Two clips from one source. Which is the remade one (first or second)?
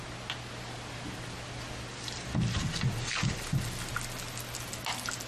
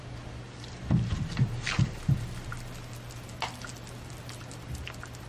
second